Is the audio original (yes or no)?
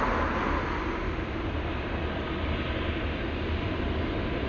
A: yes